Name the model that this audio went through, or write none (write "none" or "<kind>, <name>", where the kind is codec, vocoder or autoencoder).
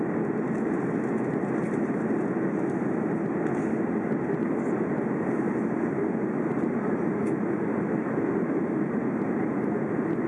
none